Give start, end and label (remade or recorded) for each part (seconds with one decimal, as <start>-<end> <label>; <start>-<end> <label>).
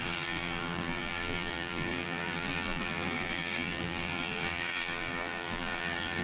0.0-6.2 remade